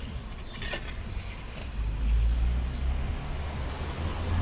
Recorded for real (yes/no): yes